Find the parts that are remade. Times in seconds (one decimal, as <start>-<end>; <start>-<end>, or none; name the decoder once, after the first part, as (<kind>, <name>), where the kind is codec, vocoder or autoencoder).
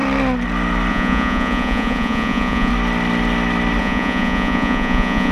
0.9-2.7 (vocoder, Vocos); 3.8-5.3